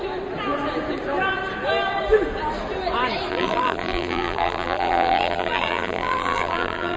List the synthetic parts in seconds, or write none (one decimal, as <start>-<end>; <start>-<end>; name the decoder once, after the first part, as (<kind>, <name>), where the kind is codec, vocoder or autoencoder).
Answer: 3.3-7.0 (vocoder, BigVGAN v2)